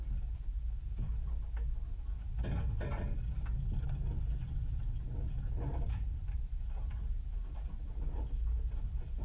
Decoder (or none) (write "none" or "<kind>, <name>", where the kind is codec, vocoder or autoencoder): none